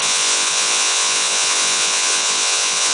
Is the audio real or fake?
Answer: fake